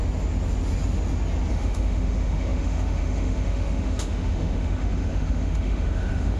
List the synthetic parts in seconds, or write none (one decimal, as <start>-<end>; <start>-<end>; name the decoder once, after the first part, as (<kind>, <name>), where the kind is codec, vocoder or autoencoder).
1.5-6.4 (autoencoder, DAC-VAE)